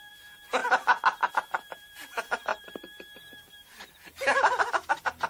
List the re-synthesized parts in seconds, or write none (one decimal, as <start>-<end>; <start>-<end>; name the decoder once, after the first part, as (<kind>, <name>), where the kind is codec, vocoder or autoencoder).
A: 2.5-4.7 (vocoder, BigVGAN v2)